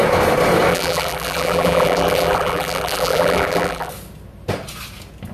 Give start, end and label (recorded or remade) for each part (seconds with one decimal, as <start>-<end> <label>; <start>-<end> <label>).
0.0-0.7 recorded; 0.7-3.9 remade; 3.9-5.3 recorded